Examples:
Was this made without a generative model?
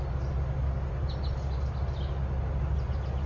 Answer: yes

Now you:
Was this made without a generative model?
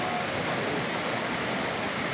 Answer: yes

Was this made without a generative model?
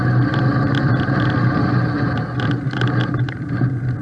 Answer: yes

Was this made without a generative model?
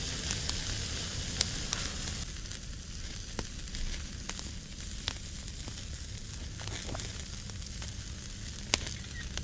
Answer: yes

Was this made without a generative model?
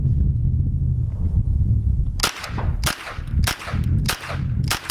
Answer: yes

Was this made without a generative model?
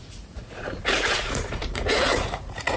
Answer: no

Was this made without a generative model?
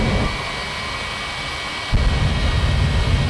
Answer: yes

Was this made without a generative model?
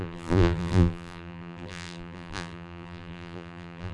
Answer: no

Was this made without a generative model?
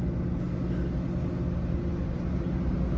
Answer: yes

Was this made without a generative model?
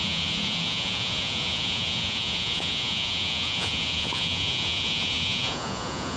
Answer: no